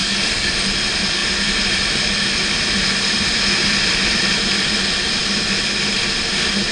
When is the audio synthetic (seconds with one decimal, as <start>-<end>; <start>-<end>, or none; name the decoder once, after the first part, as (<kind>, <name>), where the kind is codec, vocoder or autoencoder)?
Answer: 0.0-0.5 (codec, DAC)